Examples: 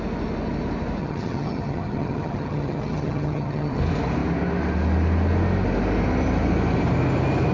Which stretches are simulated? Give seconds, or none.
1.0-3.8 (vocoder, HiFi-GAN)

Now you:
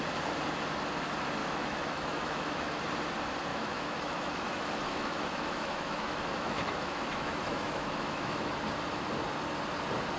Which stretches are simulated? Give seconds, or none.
1.4-2.8 (autoencoder, DAC-VAE); 3.5-8.5

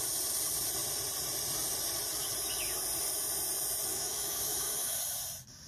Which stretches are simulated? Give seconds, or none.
3.9-5.0 (autoencoder, DAC-VAE)

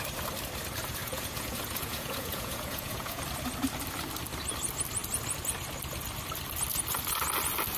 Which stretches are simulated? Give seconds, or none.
1.0-3.2 (vocoder, Vocos)

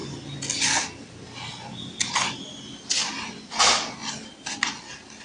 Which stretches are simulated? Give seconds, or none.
none

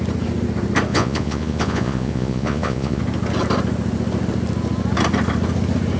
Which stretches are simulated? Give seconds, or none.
0.9-3.0 (vocoder, Vocos)

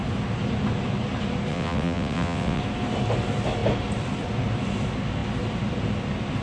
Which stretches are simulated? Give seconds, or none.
1.5-2.6 (vocoder, WaveNeXt)